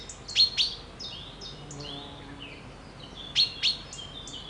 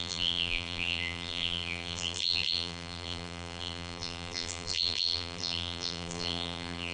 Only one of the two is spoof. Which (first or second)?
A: second